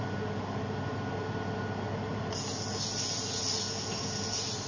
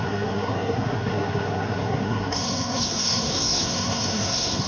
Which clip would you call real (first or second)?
first